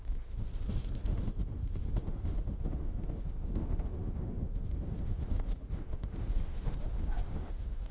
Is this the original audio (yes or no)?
no